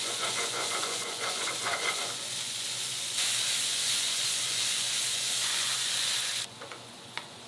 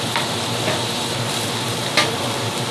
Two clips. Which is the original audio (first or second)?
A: second